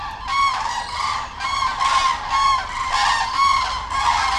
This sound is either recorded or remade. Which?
recorded